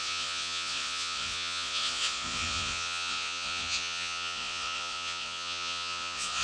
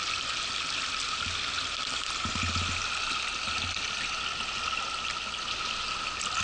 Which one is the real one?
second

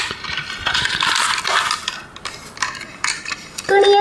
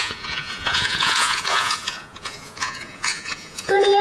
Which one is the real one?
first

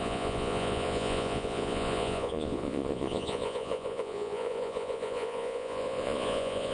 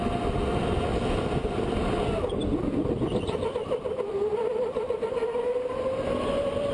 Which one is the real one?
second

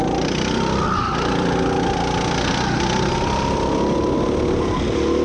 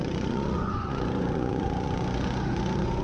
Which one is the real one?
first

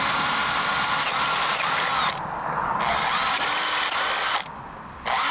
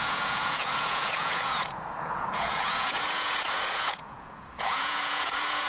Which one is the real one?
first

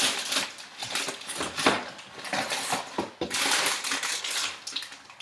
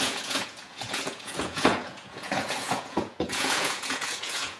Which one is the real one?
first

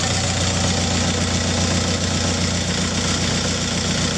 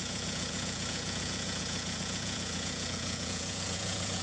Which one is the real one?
first